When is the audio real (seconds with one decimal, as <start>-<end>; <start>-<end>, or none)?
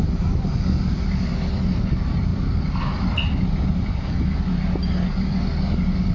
0.0-6.1